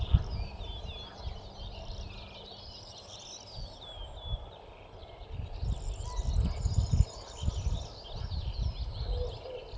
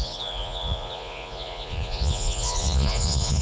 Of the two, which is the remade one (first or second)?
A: second